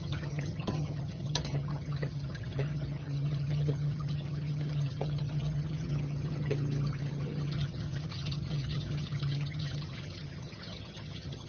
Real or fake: fake